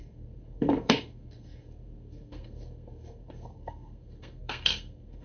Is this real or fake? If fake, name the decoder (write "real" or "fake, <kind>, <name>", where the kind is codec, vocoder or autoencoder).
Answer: fake, codec, SNAC